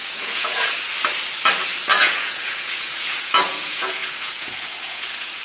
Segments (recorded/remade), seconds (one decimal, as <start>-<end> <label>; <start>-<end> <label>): 0.0-0.8 remade; 0.8-1.9 recorded; 1.9-5.4 remade